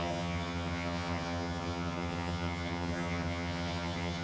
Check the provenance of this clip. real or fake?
fake